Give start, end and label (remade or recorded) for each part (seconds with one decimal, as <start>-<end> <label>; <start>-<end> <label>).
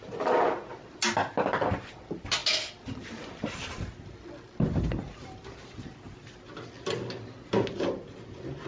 0.0-8.7 recorded